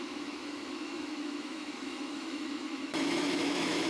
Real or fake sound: fake